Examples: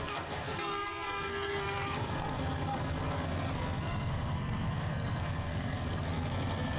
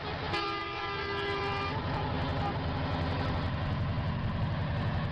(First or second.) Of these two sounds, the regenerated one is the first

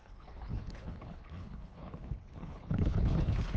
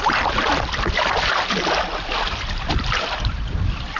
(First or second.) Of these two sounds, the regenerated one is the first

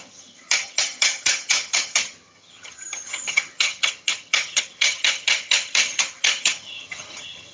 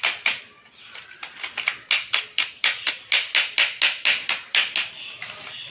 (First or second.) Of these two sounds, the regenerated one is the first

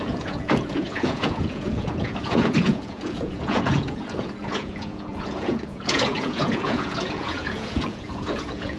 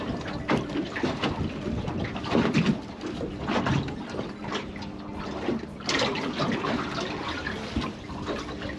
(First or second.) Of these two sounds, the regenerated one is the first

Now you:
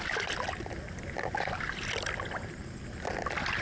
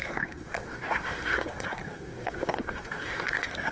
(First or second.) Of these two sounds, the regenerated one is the second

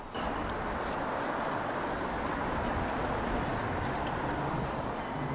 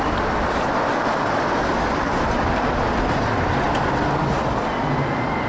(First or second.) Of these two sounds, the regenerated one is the first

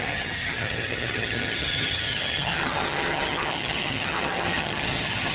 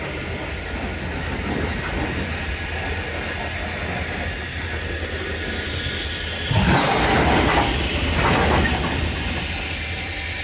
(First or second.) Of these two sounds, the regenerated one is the first